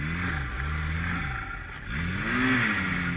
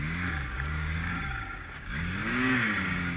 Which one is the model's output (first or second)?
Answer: second